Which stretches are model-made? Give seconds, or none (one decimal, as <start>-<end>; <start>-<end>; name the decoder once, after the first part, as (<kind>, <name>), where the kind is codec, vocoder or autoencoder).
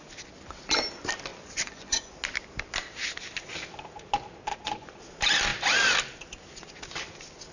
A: 1.3-2.1 (vocoder, Vocos); 4.5-5.0